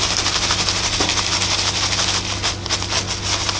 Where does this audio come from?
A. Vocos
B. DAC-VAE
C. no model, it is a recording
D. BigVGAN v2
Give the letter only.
C